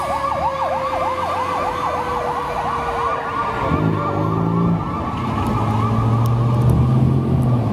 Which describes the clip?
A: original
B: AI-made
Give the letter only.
A